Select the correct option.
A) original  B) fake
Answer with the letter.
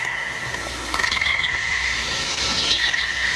B